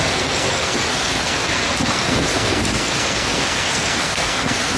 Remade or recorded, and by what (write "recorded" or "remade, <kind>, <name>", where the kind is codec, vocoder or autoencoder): remade, codec, SNAC